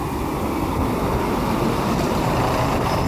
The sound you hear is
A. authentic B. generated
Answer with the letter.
A